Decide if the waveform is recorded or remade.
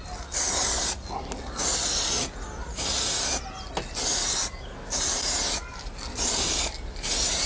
recorded